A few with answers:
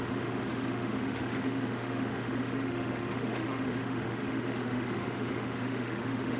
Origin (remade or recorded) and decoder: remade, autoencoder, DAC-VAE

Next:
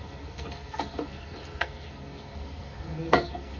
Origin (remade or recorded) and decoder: remade, codec, SNAC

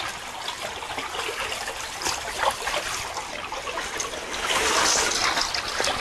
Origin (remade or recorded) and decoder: recorded